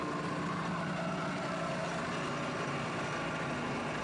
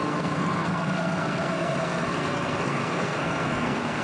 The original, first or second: first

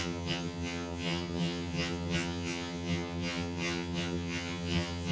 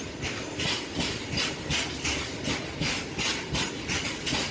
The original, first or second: second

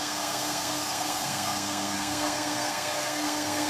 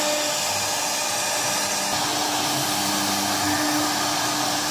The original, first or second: second